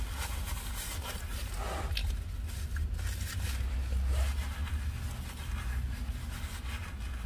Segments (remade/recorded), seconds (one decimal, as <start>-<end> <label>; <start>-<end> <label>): 0.0-7.3 recorded